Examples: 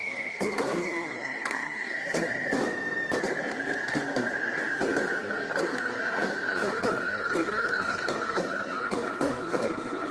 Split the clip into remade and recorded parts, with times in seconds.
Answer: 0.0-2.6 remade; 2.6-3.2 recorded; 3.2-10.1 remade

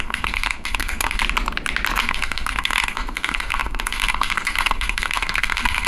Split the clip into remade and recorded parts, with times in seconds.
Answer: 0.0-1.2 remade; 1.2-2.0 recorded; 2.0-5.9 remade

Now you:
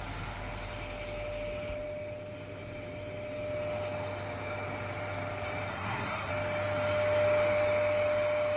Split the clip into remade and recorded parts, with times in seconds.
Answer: 0.0-5.7 recorded; 5.7-6.3 remade; 6.3-8.6 recorded